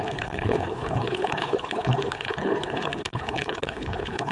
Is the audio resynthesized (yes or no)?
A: yes